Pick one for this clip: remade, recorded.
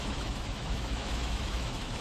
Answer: remade